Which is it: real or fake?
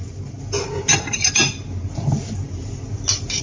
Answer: real